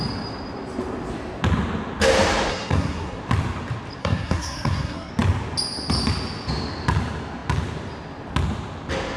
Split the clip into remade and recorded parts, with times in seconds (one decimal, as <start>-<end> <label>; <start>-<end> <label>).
0.0-2.5 recorded; 2.5-3.2 remade; 3.2-4.0 recorded; 4.0-5.1 remade; 5.1-9.2 recorded